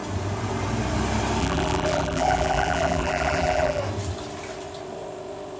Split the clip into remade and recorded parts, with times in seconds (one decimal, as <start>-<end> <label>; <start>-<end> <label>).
0.0-1.4 recorded; 1.4-3.8 remade; 3.8-5.6 recorded